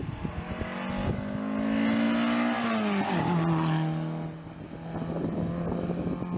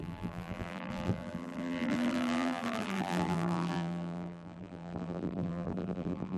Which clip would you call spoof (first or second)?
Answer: second